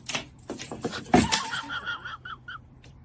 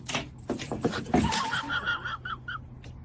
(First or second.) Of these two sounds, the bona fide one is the second